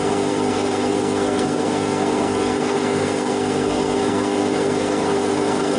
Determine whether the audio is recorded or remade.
remade